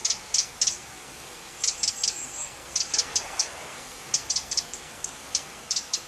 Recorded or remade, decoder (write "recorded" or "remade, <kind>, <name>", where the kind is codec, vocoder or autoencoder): remade, codec, SNAC